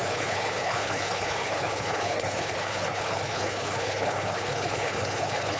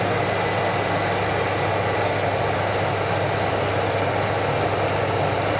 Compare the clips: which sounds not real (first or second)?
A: first